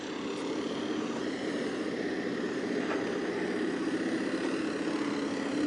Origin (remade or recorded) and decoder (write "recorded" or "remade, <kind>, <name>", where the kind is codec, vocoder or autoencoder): recorded